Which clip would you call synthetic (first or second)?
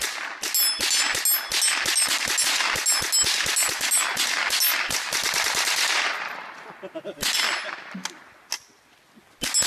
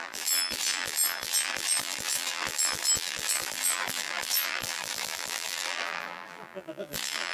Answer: second